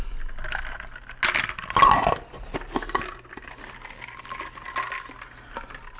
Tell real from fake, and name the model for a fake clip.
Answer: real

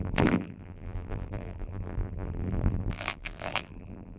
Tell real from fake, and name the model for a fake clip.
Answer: fake, vocoder, BigVGAN v2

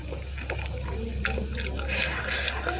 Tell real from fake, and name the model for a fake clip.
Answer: real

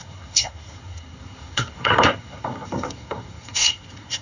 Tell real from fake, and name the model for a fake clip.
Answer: fake, codec, SNAC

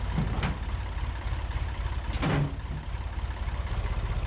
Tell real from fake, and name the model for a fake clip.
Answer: real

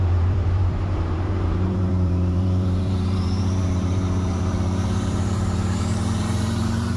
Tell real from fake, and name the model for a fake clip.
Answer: fake, vocoder, BigVGAN v2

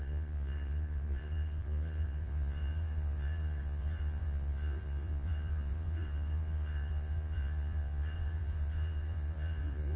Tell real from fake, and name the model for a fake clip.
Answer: fake, vocoder, Vocos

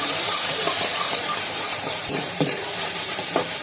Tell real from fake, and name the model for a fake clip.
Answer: fake, vocoder, BigVGAN v2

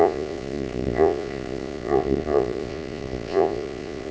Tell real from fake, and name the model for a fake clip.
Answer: fake, vocoder, Vocos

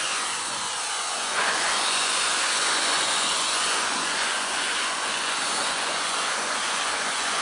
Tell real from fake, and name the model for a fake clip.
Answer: fake, vocoder, Vocos